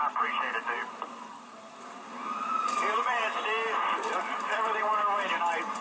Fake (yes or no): yes